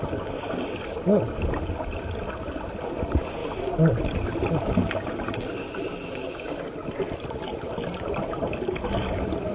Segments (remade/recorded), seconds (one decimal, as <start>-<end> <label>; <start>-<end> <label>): 0.0-9.5 recorded